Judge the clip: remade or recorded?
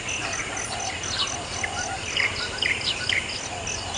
recorded